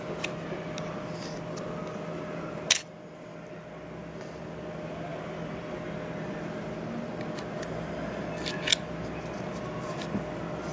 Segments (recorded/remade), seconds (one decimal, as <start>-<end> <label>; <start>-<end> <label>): 0.0-10.7 recorded